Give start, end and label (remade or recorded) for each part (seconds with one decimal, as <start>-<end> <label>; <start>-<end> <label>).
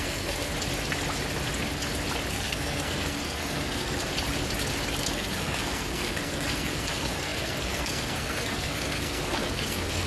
0.0-0.5 remade; 0.5-2.3 recorded; 2.3-4.1 remade; 4.1-5.0 recorded; 5.0-10.1 remade